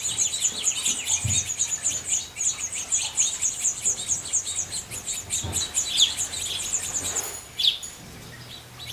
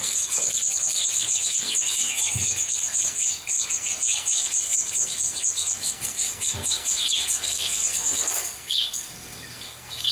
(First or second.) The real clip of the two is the first